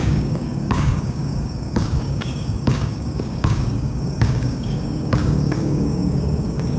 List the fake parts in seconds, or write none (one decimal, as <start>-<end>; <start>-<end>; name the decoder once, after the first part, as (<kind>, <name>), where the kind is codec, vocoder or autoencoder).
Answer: 0.0-6.8 (codec, DAC)